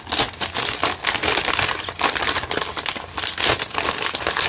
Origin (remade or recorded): recorded